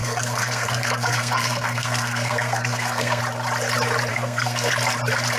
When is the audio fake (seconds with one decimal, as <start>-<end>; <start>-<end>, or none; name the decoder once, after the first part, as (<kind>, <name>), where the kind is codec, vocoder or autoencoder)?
0.0-3.2 (codec, SNAC); 4.1-4.7